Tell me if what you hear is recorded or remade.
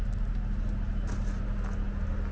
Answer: recorded